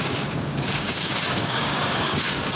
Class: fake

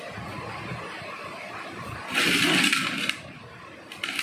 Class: real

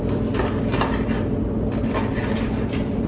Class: real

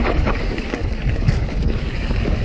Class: fake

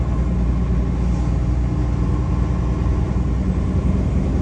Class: real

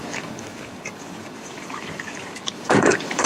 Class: fake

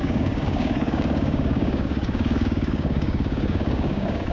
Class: fake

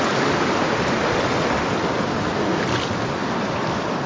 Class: real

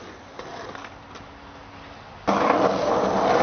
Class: real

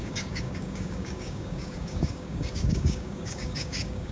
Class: fake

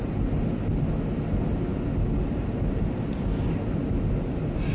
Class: real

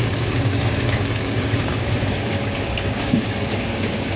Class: fake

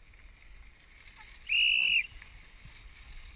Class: real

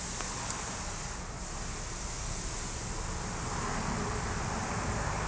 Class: real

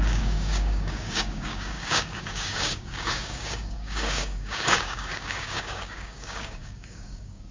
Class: fake